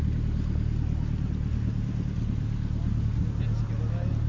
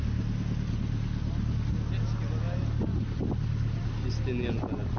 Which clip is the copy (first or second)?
first